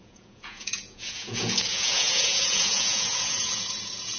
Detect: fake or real fake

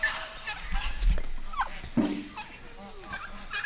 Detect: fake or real real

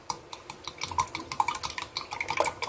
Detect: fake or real real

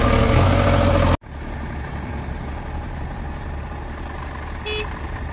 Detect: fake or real real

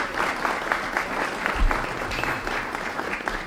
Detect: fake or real real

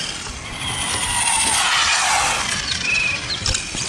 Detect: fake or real real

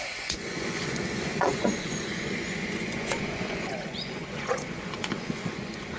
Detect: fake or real fake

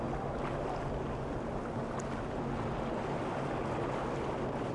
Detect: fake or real real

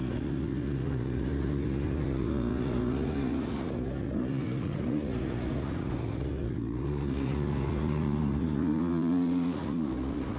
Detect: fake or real fake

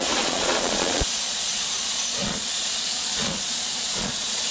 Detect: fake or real fake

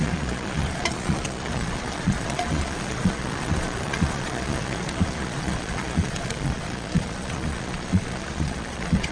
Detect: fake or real fake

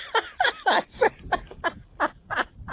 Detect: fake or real real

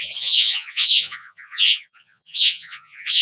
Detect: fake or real fake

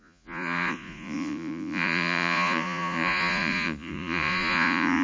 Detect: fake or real fake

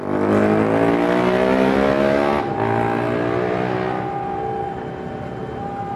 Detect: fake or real real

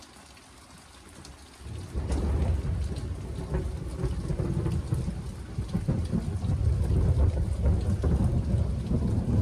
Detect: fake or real real